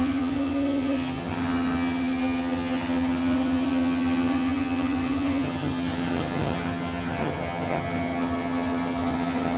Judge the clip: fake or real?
fake